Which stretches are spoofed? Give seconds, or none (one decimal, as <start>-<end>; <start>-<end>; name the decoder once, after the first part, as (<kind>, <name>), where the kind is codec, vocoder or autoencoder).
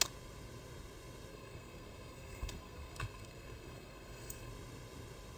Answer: 1.3-4.5 (codec, SNAC)